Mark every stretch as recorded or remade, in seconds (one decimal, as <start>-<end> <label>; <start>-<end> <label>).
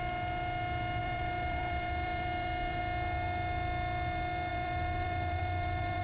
0.0-1.0 recorded; 1.0-2.8 remade; 2.8-4.5 recorded; 4.5-6.0 remade